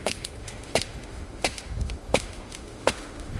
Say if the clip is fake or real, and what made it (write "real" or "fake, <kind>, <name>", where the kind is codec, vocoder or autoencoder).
fake, autoencoder, DAC-VAE